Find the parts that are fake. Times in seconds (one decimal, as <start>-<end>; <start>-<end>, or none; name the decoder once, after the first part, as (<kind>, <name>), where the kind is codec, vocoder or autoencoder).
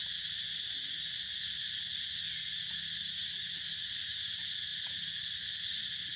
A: none